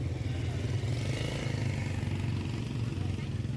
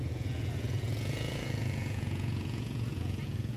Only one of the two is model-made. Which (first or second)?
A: second